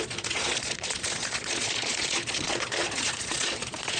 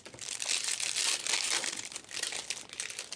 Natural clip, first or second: second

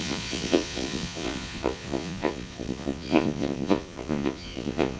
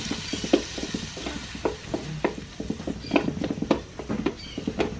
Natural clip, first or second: second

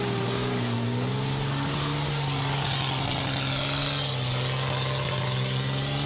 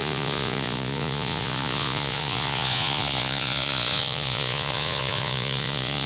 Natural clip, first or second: first